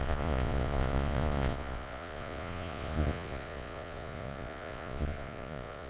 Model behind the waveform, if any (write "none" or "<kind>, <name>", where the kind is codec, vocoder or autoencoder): vocoder, Vocos